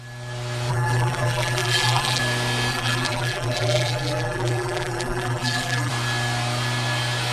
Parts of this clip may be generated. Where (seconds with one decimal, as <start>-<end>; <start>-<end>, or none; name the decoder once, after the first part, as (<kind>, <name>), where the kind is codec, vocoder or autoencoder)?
0.7-2.2 (vocoder, BigVGAN v2); 2.7-5.9